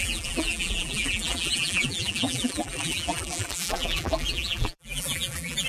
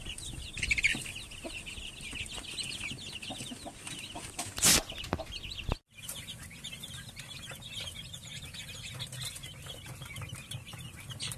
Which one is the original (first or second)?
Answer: second